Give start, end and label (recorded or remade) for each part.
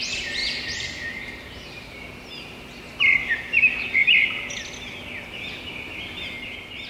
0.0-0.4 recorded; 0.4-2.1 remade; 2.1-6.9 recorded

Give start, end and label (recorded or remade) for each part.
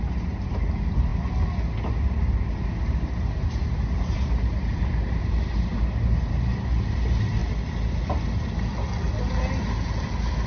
0.0-1.1 remade; 1.1-2.0 recorded; 2.0-7.4 remade; 7.4-10.5 recorded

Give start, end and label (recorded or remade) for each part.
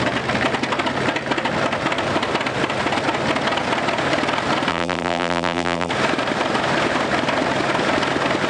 0.0-4.7 recorded; 4.7-5.9 remade; 5.9-8.5 recorded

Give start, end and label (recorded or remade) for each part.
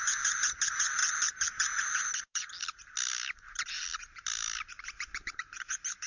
0.0-1.0 remade; 1.0-1.8 recorded; 1.8-2.3 remade; 2.3-3.1 recorded; 3.1-3.9 remade; 3.9-5.3 recorded; 5.3-6.1 remade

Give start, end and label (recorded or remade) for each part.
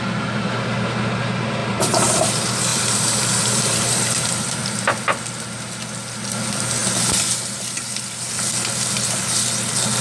0.0-1.6 recorded; 1.6-2.3 remade; 2.3-2.7 recorded; 2.7-4.5 remade; 4.5-10.0 recorded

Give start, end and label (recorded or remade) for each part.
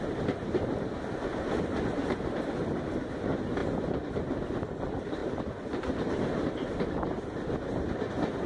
0.0-2.0 recorded; 2.0-2.6 remade; 2.6-5.2 recorded; 5.2-8.1 remade; 8.1-8.5 recorded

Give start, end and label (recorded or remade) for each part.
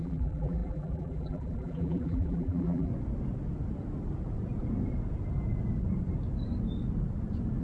0.0-2.9 remade; 2.9-7.6 recorded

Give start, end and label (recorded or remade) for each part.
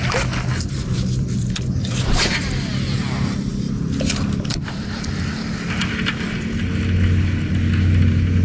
0.0-0.5 recorded; 0.5-3.0 remade; 3.0-3.5 recorded; 3.5-6.6 remade; 6.6-8.4 recorded